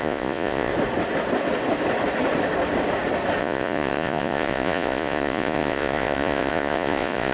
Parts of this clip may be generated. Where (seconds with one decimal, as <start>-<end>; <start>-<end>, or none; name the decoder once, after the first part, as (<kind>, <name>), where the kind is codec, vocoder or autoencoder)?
0.0-0.7 (vocoder, Vocos); 3.4-7.3